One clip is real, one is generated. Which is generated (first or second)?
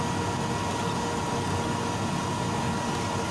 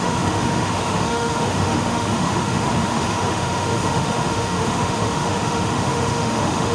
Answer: second